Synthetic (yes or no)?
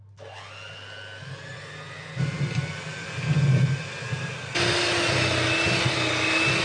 no